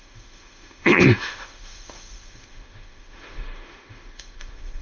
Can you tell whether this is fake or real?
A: fake